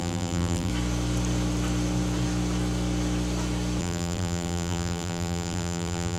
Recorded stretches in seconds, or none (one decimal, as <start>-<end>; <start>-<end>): 0.7-3.8